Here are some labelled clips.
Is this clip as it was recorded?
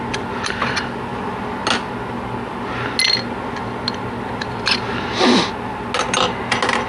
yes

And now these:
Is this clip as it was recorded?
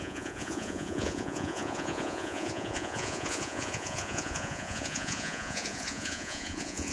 no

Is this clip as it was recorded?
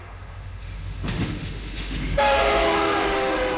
no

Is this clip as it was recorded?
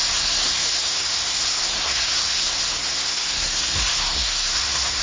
no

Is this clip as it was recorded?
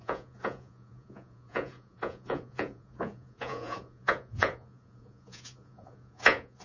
no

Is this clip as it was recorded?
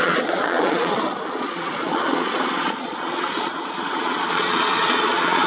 no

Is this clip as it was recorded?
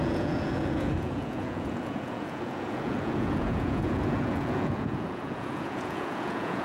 no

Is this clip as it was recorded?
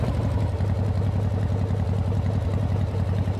yes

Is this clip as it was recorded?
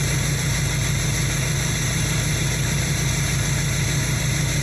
no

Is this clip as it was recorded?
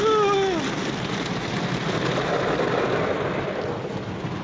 yes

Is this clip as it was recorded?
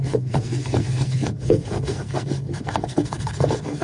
no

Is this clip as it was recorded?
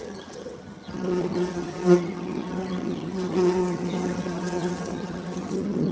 no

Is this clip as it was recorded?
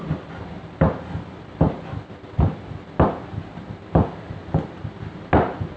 yes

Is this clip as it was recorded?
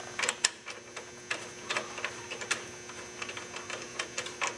yes